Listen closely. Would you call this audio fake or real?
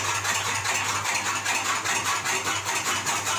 real